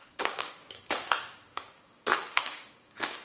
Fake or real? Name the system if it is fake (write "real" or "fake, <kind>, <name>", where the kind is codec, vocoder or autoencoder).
fake, codec, DAC